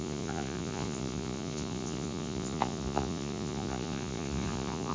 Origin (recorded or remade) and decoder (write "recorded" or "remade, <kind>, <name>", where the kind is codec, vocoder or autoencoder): remade, vocoder, Vocos